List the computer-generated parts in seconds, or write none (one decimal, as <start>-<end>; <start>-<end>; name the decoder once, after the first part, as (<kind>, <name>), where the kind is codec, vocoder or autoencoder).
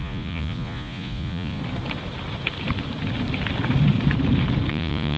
0.0-1.6 (vocoder, Vocos); 4.7-5.2